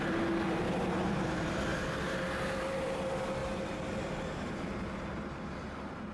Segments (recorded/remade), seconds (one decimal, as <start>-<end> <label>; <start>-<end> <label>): 0.0-6.1 remade